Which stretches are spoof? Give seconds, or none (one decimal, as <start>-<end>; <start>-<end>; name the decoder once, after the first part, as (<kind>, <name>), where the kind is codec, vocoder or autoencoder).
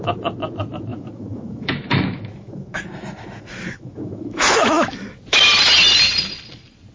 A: 0.9-5.0 (autoencoder, DAC-VAE)